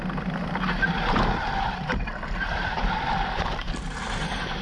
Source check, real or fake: real